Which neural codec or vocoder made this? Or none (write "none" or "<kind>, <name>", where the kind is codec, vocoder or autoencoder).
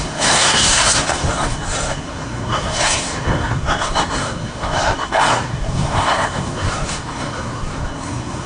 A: codec, SNAC